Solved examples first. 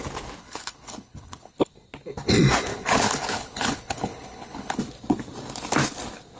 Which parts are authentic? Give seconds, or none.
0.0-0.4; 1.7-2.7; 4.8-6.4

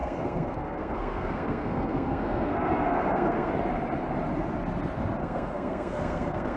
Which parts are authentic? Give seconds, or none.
3.5-5.2

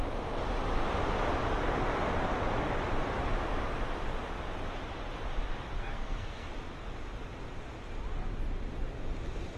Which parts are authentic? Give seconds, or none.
0.0-5.8; 6.5-9.6